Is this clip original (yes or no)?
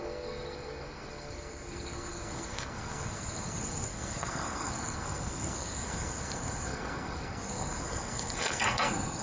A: no